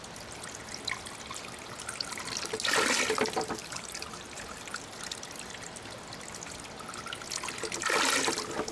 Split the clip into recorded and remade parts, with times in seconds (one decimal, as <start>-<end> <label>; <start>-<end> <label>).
0.0-3.6 recorded; 3.6-5.2 remade; 5.2-8.7 recorded